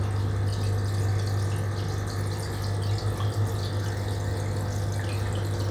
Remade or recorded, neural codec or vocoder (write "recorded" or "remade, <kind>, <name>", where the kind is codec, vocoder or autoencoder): recorded